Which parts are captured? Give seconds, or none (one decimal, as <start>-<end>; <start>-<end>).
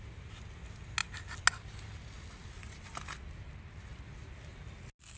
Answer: 0.0-5.2